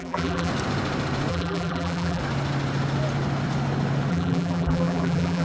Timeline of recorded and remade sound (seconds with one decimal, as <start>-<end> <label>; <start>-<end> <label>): 0.0-0.5 remade; 0.5-1.3 recorded; 1.3-2.2 remade; 2.2-4.1 recorded; 4.1-5.4 remade